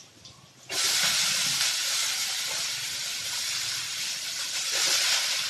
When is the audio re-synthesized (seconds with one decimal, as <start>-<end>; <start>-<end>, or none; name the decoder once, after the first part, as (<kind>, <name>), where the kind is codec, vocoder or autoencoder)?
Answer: none